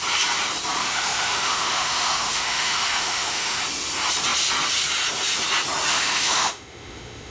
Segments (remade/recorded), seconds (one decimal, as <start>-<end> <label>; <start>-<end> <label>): 0.0-0.8 recorded; 0.8-3.6 remade; 3.6-5.9 recorded; 5.9-7.3 remade